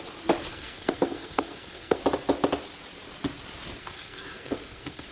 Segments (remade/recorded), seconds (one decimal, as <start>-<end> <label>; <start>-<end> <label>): 0.0-0.5 recorded; 0.5-2.0 remade; 2.0-3.8 recorded; 3.8-5.1 remade

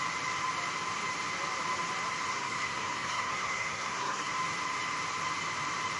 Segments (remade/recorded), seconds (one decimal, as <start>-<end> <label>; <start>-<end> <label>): 0.0-2.3 recorded; 2.3-4.3 remade; 4.3-6.0 recorded

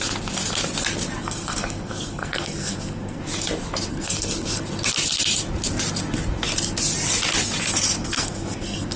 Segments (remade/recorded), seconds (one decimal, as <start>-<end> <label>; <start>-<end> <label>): 0.0-1.2 recorded; 1.2-3.2 remade; 3.2-3.9 recorded; 3.9-4.6 remade; 4.6-8.0 recorded; 8.0-9.0 remade

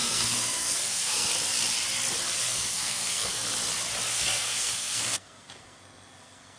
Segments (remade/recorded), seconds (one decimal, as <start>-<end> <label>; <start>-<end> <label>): 0.0-1.3 remade; 1.3-2.4 recorded; 2.4-3.4 remade; 3.4-4.1 recorded; 4.1-6.6 remade

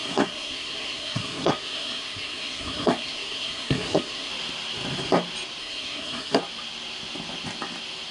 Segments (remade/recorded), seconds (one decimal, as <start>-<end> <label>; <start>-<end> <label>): 0.0-4.3 remade; 4.3-5.6 recorded; 5.6-6.4 remade; 6.4-8.1 recorded

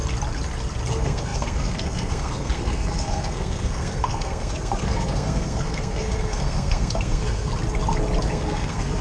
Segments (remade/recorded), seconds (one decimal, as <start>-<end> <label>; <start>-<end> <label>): 0.0-0.9 recorded; 0.9-7.5 remade; 7.5-8.2 recorded; 8.2-9.0 remade